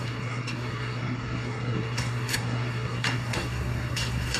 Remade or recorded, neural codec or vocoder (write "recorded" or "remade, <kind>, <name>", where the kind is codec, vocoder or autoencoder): remade, codec, SNAC